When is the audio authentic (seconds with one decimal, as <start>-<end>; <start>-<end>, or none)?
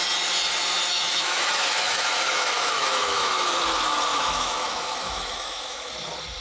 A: 0.0-0.9; 3.6-4.1; 5.9-6.4